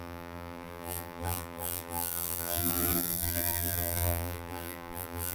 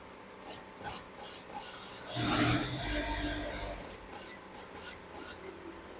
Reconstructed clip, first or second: first